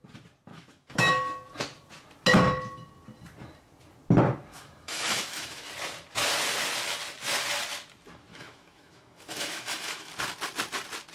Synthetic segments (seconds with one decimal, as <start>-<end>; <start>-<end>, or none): 0.5-1.1; 4.5-5.7; 8.3-10.1